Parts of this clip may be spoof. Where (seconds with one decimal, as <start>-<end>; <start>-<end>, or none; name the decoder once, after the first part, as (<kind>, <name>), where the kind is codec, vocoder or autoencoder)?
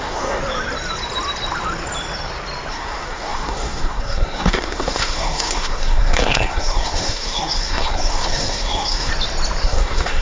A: 0.0-0.4 (codec, SNAC); 2.7-9.1; 9.6-10.2